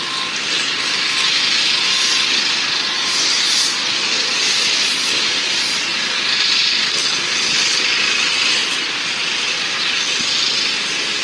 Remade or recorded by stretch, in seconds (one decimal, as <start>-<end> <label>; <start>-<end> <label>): 0.0-11.2 recorded